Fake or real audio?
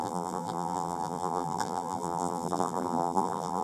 fake